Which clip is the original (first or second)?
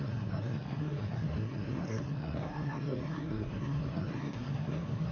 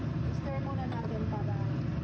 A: second